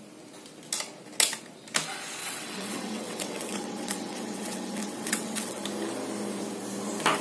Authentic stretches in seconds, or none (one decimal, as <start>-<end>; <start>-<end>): 0.0-2.2; 5.6-7.2